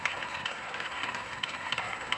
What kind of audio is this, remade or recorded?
remade